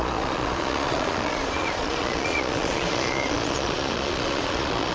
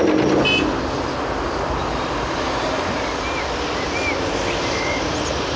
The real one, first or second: second